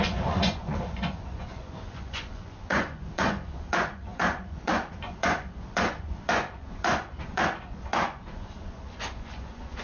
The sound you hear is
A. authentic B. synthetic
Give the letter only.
B